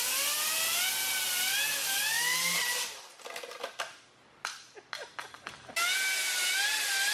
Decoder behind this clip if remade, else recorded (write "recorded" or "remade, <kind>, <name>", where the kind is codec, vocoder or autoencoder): recorded